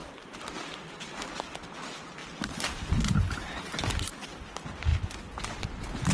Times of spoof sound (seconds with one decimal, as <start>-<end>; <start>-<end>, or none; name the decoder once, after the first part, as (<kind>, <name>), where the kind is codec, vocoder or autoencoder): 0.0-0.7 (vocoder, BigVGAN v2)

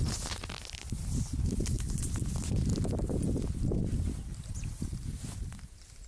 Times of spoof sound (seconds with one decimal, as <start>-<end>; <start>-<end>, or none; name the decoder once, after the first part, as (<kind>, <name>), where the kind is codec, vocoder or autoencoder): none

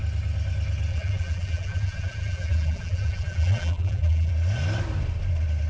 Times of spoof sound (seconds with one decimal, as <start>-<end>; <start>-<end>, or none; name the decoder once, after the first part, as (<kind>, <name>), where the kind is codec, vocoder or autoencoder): 0.9-4.3 (vocoder, BigVGAN v2)